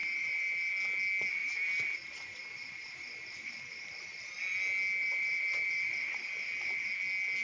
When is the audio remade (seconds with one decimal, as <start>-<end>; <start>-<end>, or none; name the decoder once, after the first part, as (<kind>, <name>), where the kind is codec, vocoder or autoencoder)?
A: 0.0-0.7 (vocoder, BigVGAN v2); 1.4-4.3; 5.0-6.9